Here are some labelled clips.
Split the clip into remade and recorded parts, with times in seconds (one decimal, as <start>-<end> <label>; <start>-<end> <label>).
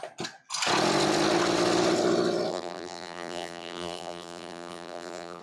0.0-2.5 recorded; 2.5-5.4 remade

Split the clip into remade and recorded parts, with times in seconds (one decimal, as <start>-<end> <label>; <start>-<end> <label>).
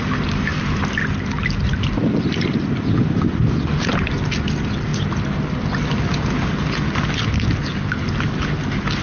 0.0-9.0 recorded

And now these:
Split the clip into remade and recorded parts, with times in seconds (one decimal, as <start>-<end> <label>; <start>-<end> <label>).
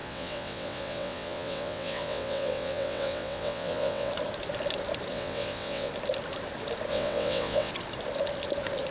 0.0-4.1 remade; 4.1-5.1 recorded; 5.1-5.9 remade; 5.9-6.9 recorded; 6.9-7.7 remade; 7.7-8.9 recorded